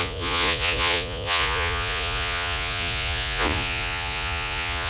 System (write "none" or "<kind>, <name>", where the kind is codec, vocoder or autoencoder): vocoder, Vocos